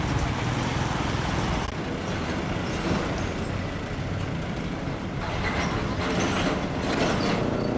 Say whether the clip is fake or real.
real